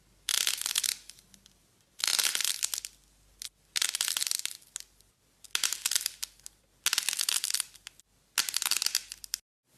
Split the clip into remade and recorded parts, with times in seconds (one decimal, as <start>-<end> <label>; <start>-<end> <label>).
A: 0.0-9.8 recorded